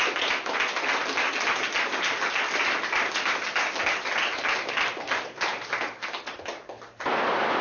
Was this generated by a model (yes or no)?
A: no